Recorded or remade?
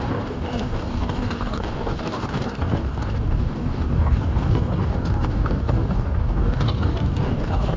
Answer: remade